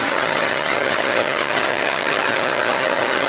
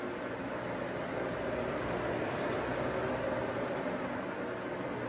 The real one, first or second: second